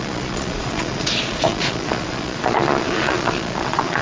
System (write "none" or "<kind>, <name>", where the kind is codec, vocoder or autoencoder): vocoder, Vocos